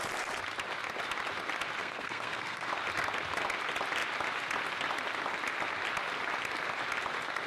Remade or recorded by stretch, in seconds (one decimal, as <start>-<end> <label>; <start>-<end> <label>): 0.0-1.8 recorded; 1.8-2.7 remade; 2.7-7.5 recorded